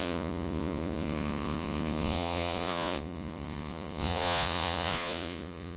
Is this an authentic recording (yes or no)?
no